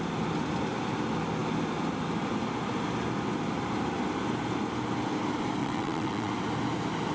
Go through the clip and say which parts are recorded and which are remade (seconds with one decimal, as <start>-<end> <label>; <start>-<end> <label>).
0.0-5.6 recorded; 5.6-6.3 remade; 6.3-7.1 recorded